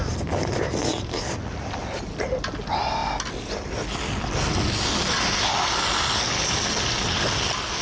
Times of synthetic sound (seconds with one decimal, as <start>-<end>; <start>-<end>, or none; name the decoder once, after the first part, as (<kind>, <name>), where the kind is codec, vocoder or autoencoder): none